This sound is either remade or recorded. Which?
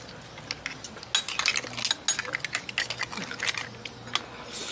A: recorded